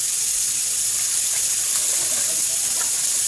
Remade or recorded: recorded